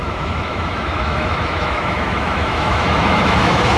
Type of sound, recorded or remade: remade